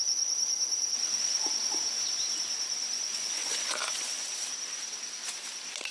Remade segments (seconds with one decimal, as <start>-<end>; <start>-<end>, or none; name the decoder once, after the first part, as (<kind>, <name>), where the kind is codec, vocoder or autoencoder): 2.9-4.4 (vocoder, Vocos)